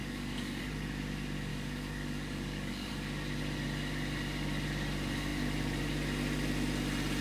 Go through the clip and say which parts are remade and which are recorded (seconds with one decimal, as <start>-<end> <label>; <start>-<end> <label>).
0.0-0.6 remade; 0.6-1.5 recorded; 1.5-2.9 remade; 2.9-7.2 recorded